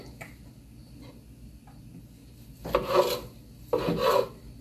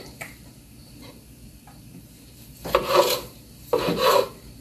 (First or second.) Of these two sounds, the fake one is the second